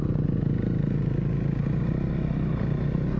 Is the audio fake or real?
real